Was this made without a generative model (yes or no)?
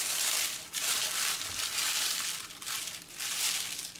yes